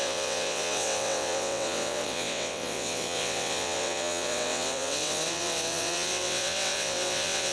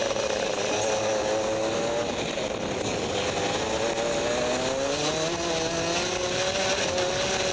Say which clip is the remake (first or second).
first